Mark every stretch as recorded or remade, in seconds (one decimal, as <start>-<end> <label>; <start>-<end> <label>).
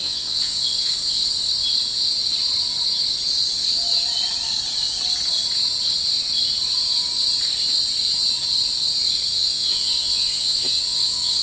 0.0-0.9 remade; 0.9-9.3 recorded; 9.3-11.4 remade